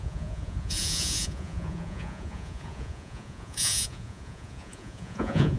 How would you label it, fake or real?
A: fake